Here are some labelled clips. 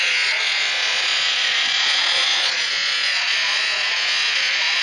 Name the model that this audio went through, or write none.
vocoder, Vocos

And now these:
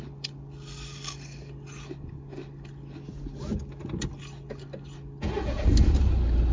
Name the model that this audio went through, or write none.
none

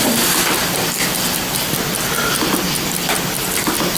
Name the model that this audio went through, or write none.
none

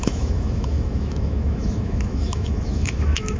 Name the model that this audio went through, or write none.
autoencoder, DAC-VAE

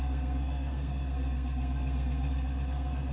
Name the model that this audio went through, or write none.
codec, SNAC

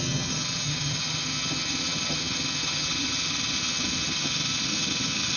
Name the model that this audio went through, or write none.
vocoder, HiFi-GAN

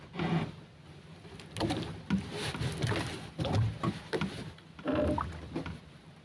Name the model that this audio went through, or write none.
none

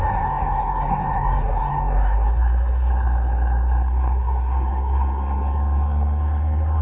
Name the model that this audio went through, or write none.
codec, SNAC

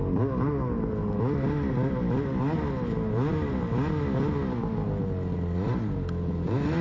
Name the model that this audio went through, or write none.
none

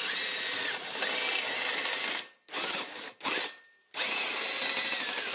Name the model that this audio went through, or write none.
none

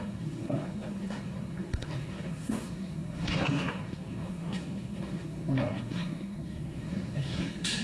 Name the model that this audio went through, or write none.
codec, SNAC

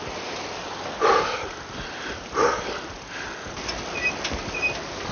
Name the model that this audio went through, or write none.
none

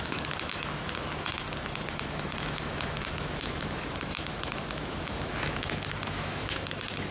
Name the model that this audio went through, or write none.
autoencoder, DAC-VAE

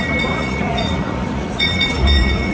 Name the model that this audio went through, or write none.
vocoder, Vocos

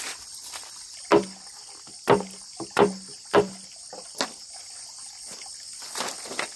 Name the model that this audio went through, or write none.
none